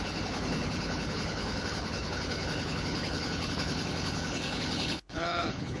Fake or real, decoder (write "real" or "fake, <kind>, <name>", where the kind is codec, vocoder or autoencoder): fake, codec, HILCodec